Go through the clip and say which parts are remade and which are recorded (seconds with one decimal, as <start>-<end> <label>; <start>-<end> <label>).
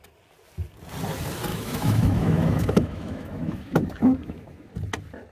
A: 0.0-1.5 recorded; 1.5-4.7 remade; 4.7-5.3 recorded